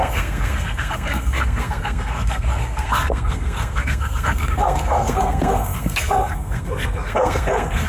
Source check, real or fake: fake